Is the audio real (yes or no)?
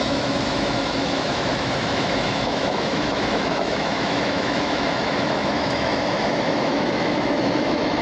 no